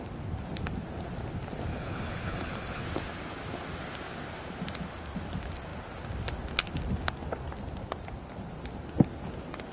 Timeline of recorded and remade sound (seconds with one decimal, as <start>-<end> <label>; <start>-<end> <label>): 0.0-1.7 recorded; 1.7-2.8 remade; 2.8-9.7 recorded